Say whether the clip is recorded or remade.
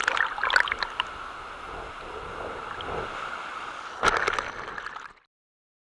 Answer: recorded